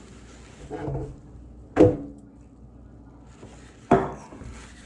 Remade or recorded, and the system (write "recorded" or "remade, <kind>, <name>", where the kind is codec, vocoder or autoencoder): recorded